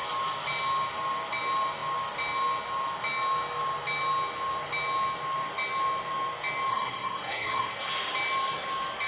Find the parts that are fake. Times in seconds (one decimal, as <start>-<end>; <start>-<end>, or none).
6.7-7.9